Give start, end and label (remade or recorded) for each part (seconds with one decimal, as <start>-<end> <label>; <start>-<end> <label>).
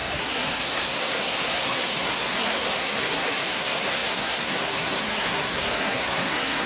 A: 0.0-6.7 remade